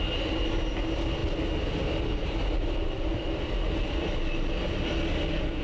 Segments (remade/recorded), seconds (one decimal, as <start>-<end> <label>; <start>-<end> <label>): 0.0-5.6 recorded